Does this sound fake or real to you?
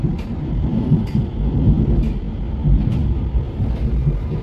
real